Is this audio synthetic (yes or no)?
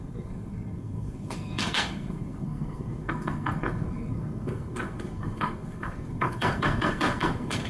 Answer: yes